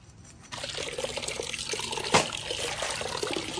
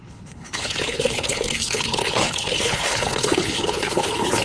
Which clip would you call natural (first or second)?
first